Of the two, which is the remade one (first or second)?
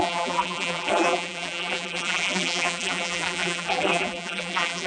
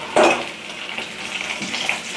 first